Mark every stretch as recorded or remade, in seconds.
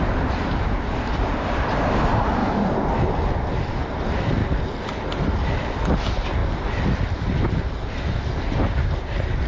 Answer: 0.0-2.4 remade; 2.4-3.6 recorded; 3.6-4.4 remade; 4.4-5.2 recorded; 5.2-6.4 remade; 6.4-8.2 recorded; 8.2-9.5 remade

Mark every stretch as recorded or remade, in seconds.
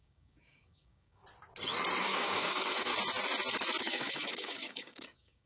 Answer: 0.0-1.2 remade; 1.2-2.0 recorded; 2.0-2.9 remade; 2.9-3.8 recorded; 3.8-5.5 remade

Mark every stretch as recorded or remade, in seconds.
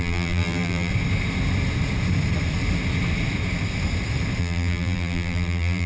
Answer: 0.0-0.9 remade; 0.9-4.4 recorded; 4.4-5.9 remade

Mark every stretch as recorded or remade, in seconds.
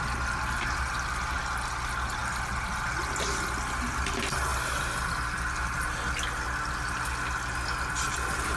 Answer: 0.0-8.6 recorded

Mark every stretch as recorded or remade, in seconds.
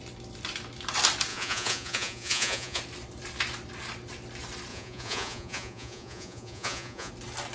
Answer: 0.0-1.3 recorded; 1.3-2.8 remade; 2.8-4.7 recorded; 4.7-7.1 remade; 7.1-7.5 recorded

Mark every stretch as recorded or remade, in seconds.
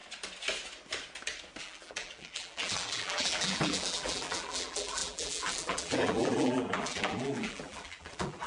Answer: 0.0-1.6 recorded; 1.6-8.5 remade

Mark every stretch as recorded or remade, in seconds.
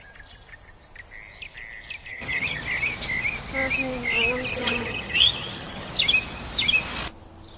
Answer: 0.0-2.1 recorded; 2.1-2.6 remade; 2.6-4.5 recorded; 4.5-5.9 remade; 5.9-7.6 recorded